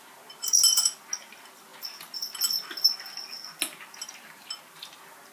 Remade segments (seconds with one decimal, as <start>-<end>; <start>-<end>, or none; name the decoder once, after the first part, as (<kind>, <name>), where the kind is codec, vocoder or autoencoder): none